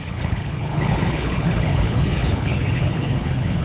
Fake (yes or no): yes